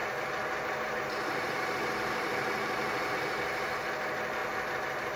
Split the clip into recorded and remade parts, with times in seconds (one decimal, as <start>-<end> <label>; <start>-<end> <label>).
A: 0.0-3.1 remade; 3.1-4.4 recorded; 4.4-5.2 remade